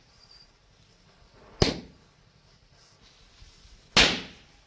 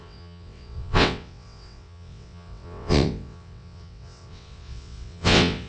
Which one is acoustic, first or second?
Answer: first